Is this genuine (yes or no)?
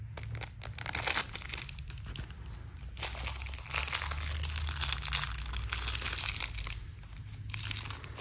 yes